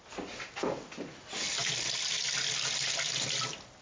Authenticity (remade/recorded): recorded